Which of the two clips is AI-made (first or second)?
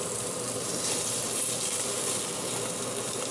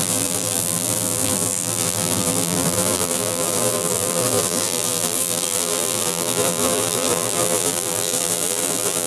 second